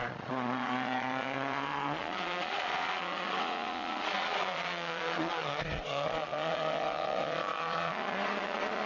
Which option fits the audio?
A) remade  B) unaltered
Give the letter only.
A